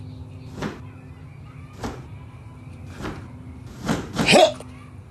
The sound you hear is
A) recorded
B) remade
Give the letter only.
A